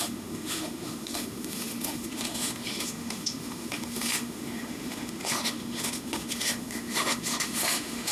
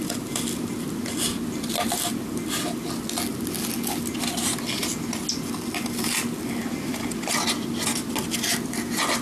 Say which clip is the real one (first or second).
second